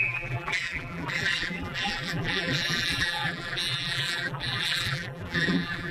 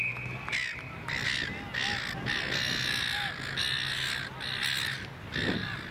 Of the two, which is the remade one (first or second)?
first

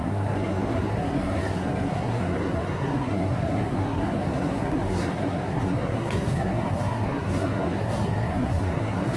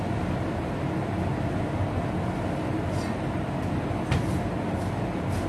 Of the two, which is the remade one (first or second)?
first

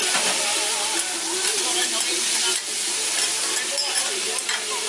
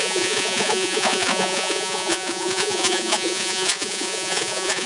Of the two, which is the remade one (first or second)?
second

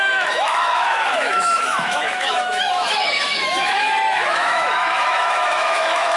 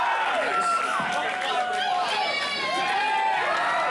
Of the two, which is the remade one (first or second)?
first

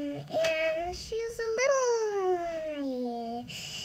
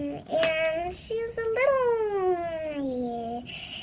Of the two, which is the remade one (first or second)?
first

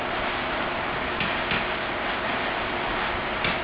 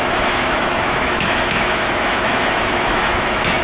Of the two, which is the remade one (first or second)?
second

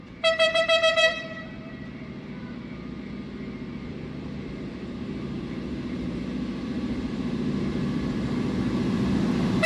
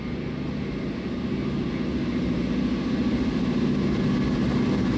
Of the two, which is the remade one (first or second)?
first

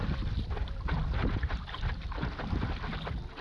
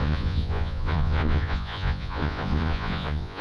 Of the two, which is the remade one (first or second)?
second